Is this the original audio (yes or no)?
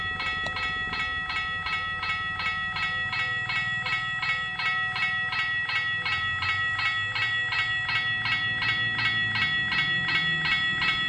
yes